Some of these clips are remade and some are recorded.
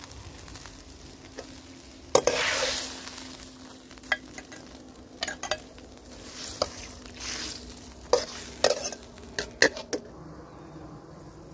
recorded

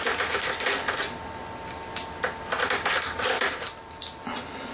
recorded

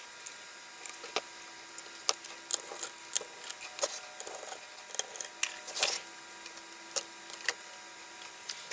recorded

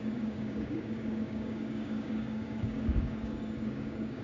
remade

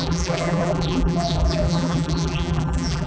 remade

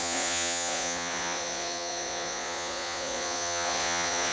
remade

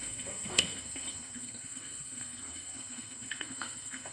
remade